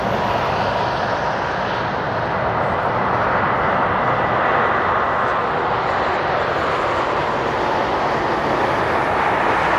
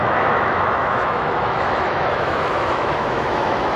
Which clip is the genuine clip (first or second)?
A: first